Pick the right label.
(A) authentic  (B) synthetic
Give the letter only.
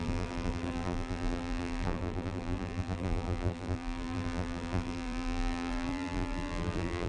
B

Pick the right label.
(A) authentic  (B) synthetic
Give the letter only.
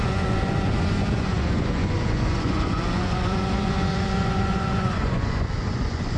B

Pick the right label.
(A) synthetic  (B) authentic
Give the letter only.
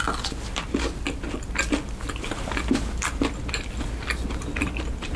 B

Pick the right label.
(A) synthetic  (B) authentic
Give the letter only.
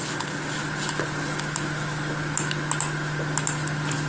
B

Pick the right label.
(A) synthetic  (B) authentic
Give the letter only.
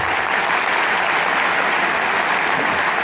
B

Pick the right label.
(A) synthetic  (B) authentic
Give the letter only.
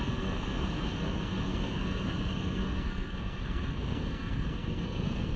A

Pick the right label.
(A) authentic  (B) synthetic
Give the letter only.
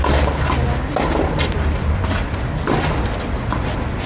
A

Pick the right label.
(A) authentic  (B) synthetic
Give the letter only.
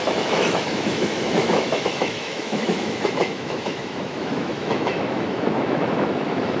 B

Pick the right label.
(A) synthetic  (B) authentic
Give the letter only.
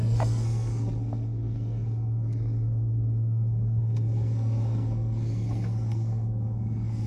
A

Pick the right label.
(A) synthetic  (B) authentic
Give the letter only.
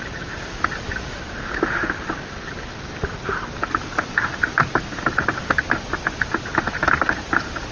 B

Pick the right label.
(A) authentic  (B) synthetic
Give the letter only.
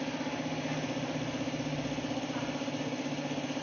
A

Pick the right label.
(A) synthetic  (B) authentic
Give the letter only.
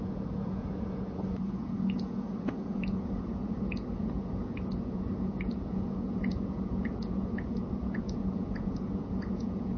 A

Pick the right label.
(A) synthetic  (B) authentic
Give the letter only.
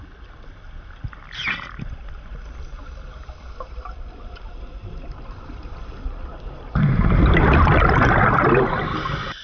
B